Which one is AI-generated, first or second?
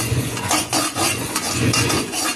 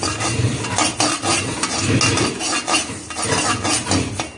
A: first